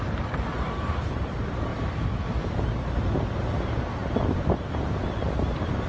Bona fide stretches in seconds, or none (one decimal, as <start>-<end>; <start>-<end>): 0.0-5.9

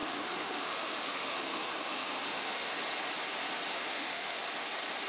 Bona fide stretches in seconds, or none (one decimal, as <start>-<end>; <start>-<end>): 2.7-3.7; 4.4-5.1

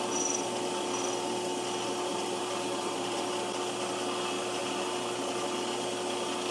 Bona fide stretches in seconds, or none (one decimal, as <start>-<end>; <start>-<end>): 0.0-2.1; 3.3-6.5

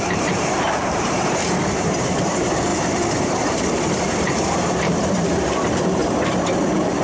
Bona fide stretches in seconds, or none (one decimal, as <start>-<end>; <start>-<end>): 2.7-3.2; 6.0-7.0